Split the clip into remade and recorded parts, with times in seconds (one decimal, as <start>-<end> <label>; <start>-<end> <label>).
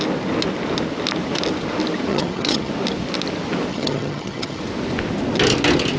0.0-2.1 recorded; 2.1-2.7 remade; 2.7-3.7 recorded; 3.7-4.6 remade; 4.6-6.0 recorded